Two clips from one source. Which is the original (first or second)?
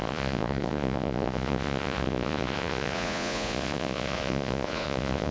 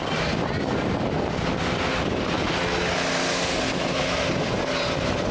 second